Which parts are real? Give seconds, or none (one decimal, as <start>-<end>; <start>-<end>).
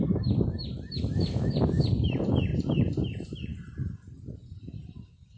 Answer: 0.0-2.5; 3.6-4.4